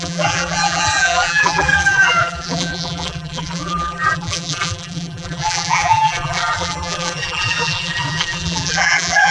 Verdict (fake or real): fake